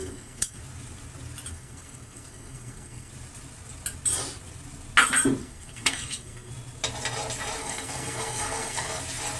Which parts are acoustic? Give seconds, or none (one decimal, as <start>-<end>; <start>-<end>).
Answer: 0.6-1.5; 3.1-5.4; 6.5-7.6; 9.0-9.4